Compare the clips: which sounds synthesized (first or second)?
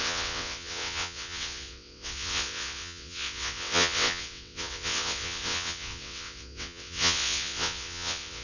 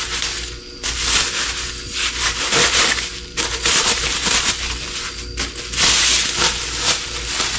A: first